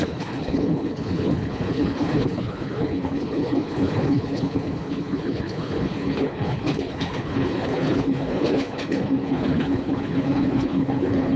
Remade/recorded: remade